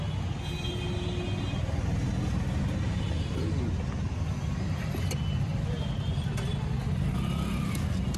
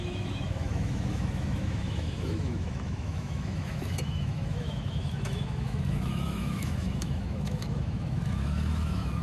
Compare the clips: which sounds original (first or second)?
first